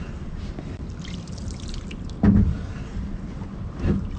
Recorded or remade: recorded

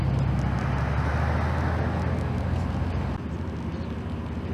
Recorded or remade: recorded